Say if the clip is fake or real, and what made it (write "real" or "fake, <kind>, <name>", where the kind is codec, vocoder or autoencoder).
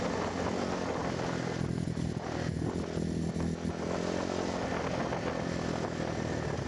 real